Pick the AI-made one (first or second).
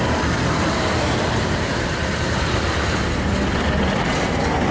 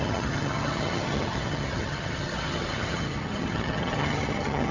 second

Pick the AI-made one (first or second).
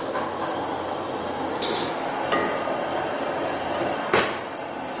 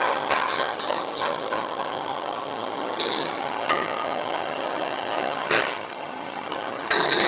second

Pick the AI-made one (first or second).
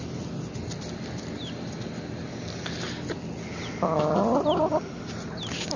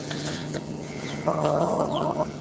second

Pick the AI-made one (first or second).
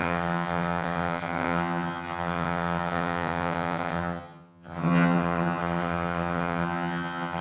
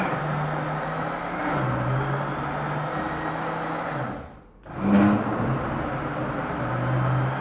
first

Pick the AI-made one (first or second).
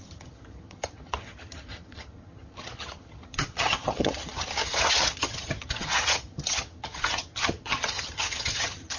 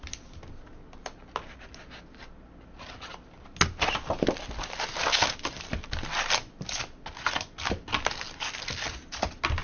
first